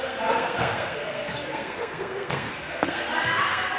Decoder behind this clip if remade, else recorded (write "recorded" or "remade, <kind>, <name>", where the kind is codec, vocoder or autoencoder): remade, codec, SNAC